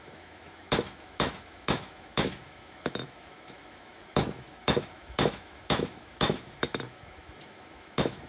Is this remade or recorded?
remade